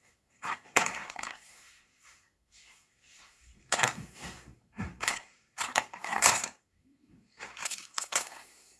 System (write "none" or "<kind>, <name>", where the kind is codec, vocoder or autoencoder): codec, SNAC